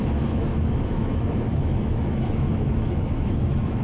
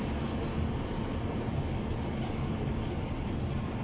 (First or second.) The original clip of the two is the second